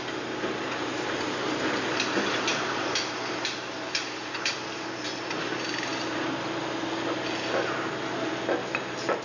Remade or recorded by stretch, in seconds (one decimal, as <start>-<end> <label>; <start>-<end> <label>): 0.0-9.2 recorded